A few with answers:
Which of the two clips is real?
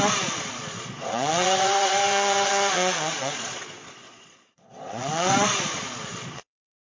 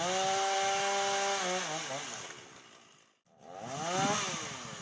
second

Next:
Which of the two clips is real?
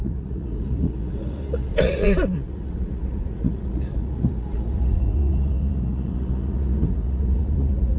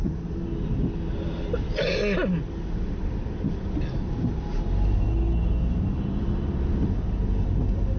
second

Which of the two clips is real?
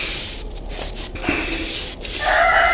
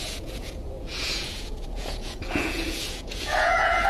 first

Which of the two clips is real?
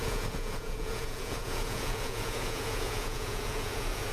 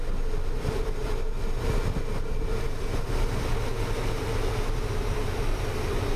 second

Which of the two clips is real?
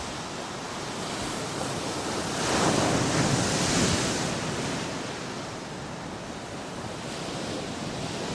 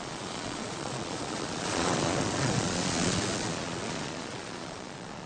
first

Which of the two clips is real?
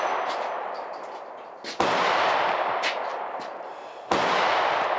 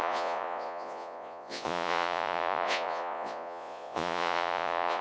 first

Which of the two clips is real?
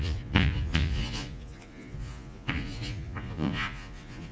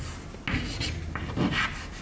second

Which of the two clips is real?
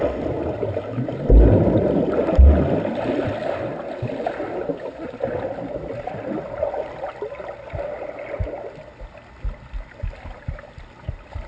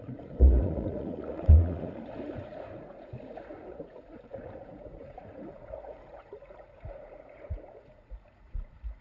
first